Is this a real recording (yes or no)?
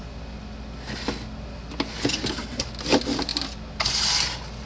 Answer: yes